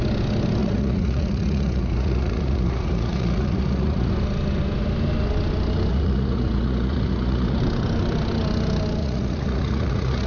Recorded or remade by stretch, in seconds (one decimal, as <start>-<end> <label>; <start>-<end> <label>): 0.0-0.6 recorded; 0.6-4.1 remade; 4.1-5.9 recorded; 5.9-7.6 remade; 7.6-9.0 recorded; 9.0-10.3 remade